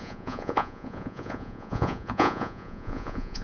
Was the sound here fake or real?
fake